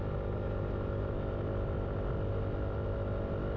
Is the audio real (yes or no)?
yes